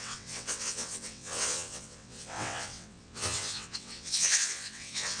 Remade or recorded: remade